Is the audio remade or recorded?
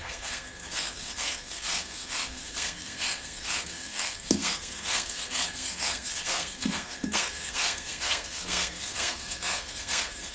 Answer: remade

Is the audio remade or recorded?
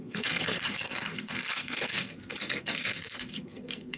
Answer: remade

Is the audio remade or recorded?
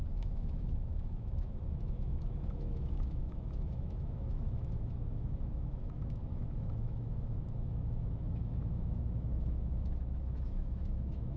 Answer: remade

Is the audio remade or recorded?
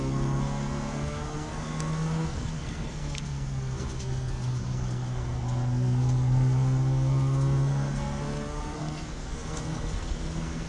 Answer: remade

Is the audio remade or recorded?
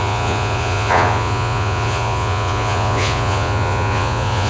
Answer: remade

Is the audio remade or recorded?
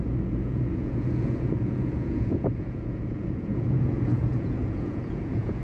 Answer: remade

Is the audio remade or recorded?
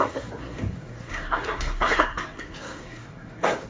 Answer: remade